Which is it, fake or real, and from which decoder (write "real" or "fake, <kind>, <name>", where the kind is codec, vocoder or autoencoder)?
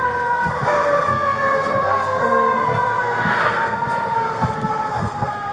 fake, codec, SNAC